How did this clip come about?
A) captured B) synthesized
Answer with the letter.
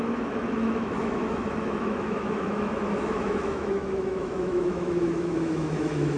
B